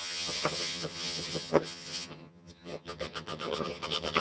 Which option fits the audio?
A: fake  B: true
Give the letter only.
A